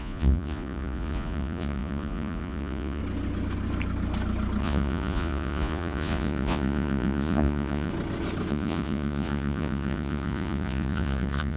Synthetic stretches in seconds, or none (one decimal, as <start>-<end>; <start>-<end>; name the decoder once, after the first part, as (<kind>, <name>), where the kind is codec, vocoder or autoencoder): 0.0-3.0 (vocoder, Vocos); 4.6-7.9; 8.5-11.6